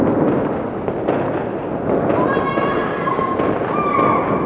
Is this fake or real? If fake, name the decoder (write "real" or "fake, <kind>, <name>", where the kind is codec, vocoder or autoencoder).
real